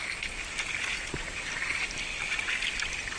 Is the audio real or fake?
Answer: real